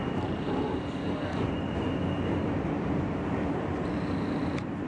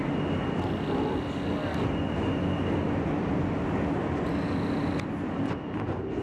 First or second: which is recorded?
second